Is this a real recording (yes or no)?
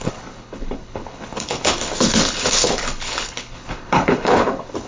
no